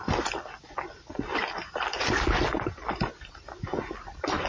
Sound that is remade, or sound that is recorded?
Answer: recorded